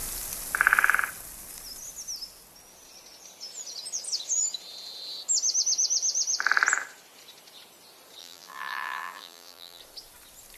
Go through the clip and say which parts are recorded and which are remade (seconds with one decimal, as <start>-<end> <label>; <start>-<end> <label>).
0.0-8.2 recorded; 8.2-9.8 remade; 9.8-10.6 recorded